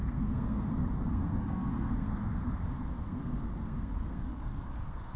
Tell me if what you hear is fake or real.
fake